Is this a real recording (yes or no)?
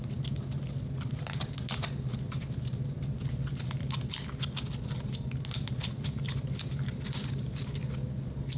yes